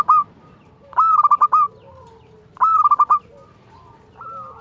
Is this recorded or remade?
recorded